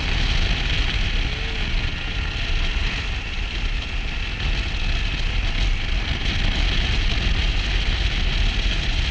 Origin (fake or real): real